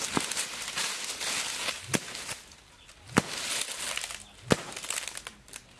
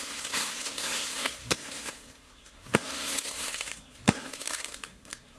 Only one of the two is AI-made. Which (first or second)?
second